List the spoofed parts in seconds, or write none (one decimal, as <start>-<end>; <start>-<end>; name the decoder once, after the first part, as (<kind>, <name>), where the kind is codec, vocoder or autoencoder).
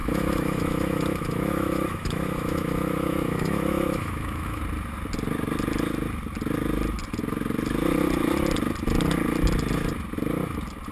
0.0-4.6 (autoencoder, DAC-VAE)